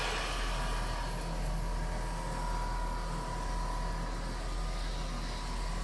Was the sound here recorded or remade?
recorded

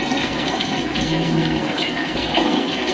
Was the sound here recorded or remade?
remade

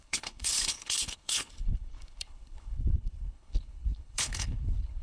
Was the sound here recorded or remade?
remade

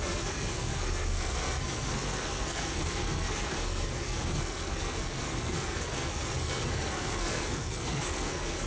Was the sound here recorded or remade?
remade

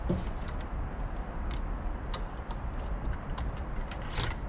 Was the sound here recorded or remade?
recorded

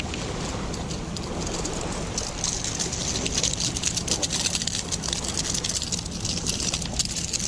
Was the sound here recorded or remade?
recorded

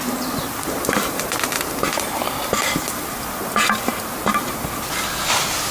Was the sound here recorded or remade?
recorded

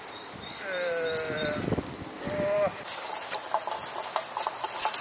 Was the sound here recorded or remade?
remade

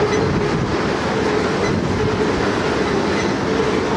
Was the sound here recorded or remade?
recorded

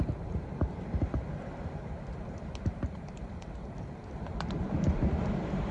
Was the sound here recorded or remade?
remade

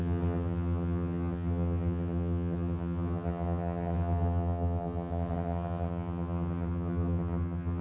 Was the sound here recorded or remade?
remade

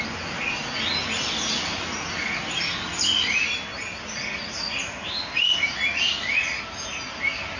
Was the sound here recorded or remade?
recorded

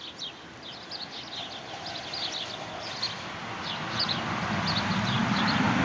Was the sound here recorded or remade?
recorded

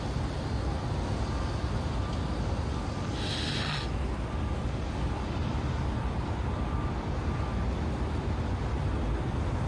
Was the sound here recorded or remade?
recorded